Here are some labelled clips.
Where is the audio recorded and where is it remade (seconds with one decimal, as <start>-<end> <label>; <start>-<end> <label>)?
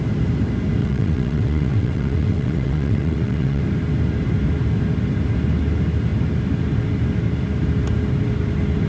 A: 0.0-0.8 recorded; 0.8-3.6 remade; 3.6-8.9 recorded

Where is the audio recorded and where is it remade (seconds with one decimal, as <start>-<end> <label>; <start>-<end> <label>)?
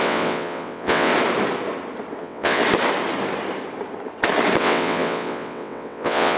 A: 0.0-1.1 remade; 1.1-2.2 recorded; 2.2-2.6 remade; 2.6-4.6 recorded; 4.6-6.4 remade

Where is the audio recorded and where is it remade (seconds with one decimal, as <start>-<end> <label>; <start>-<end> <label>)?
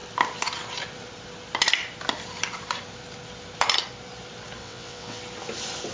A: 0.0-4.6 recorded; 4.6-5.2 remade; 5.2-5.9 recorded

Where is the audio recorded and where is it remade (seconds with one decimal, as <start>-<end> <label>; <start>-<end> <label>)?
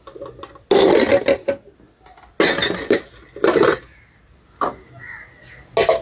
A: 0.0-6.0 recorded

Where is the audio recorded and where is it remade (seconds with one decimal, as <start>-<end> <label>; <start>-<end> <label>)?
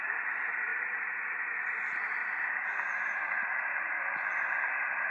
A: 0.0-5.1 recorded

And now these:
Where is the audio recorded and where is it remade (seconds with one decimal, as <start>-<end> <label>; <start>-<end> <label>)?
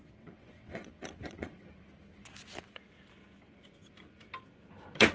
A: 0.0-1.7 remade; 1.7-5.1 recorded